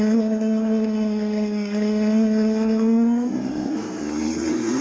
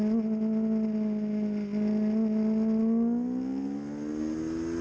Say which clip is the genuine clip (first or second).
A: second